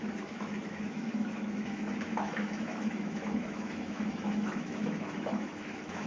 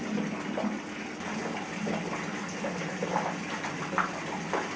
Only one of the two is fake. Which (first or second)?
first